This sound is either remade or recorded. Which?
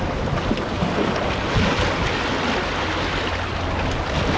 recorded